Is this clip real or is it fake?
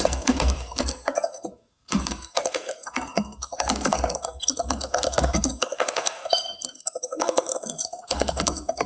fake